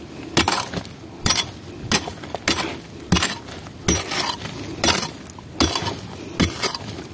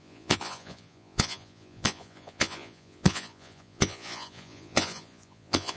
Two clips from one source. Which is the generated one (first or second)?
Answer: second